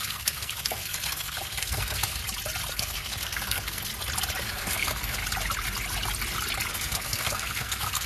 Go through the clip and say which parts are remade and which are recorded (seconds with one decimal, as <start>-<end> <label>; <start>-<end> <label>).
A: 0.0-2.2 remade; 2.2-2.7 recorded; 2.7-3.9 remade; 3.9-4.4 recorded; 4.4-5.2 remade; 5.2-6.7 recorded; 6.7-8.1 remade